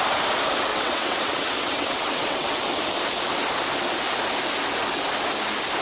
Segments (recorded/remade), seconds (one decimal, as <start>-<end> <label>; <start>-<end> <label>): 0.0-0.7 recorded; 0.7-2.5 remade; 2.5-5.8 recorded